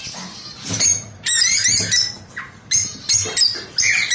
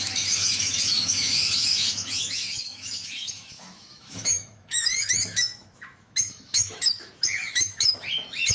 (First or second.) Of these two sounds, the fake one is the second